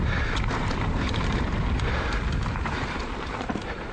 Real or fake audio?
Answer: fake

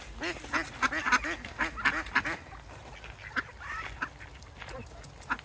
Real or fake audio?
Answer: real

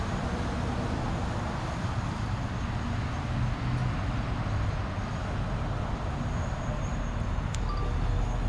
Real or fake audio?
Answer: real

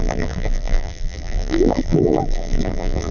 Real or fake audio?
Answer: fake